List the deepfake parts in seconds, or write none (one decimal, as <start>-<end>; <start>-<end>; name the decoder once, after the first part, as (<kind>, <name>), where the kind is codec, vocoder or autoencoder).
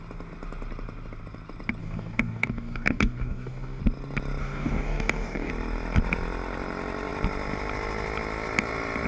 1.8-3.8 (codec, DAC); 4.4-5.5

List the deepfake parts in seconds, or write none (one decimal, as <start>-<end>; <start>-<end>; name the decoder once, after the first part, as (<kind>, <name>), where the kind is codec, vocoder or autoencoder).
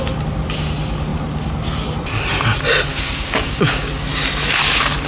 2.9-3.9 (codec, DAC)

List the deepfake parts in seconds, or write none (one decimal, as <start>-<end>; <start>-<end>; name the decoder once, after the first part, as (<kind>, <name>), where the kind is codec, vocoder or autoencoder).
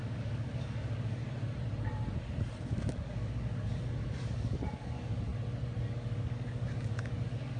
0.0-1.2 (codec, DAC); 2.6-5.3; 5.8-7.6